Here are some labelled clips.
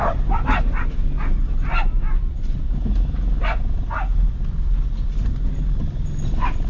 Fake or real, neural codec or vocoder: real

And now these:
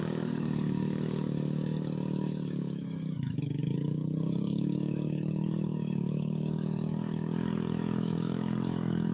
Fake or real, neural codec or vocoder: fake, codec, DAC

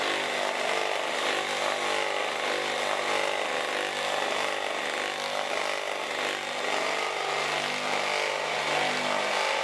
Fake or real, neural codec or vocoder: real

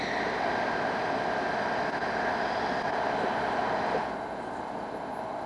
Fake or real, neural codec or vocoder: real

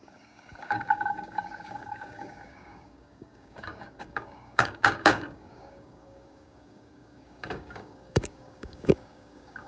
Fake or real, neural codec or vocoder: fake, codec, DAC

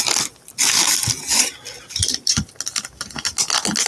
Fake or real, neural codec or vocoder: real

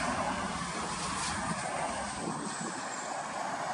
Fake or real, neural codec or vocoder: real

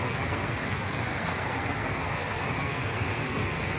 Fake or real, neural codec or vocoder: fake, codec, SNAC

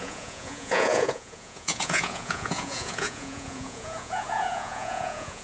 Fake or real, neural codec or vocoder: fake, vocoder, Vocos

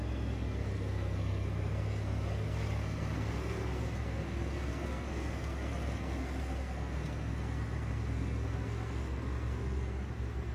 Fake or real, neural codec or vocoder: fake, codec, SNAC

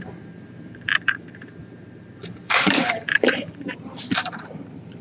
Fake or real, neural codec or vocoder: fake, vocoder, BigVGAN v2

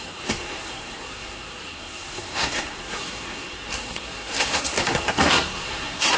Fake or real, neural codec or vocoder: fake, codec, SNAC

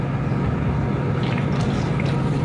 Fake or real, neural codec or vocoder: real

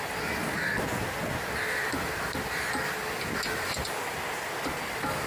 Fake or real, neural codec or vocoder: real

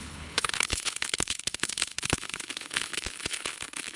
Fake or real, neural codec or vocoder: fake, codec, HILCodec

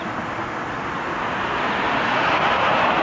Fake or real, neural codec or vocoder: real